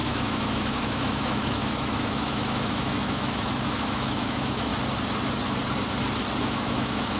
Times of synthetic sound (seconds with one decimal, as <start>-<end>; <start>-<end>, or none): 0.0-4.7; 6.4-7.2